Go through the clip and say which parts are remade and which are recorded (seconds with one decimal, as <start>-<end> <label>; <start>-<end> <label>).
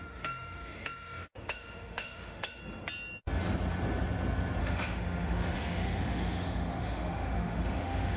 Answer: 0.0-2.6 remade; 2.6-4.6 recorded; 4.6-8.2 remade